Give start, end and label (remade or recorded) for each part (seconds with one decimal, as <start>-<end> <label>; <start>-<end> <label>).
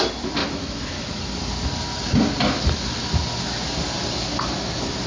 0.0-0.4 recorded; 0.4-1.2 remade; 1.2-5.1 recorded